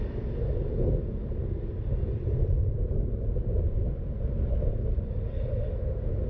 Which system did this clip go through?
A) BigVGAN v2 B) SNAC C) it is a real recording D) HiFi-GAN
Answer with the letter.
C